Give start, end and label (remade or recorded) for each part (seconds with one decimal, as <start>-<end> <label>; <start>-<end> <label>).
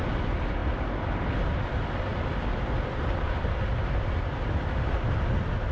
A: 0.0-5.7 recorded